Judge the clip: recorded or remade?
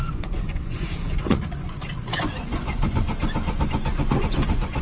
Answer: remade